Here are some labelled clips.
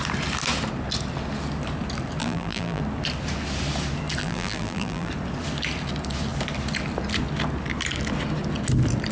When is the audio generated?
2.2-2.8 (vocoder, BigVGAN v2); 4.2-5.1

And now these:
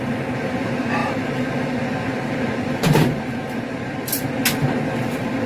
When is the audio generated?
1.0-4.3 (vocoder, BigVGAN v2)

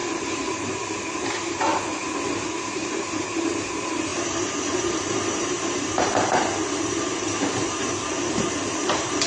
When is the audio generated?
0.0-1.7 (vocoder, BigVGAN v2); 2.7-9.3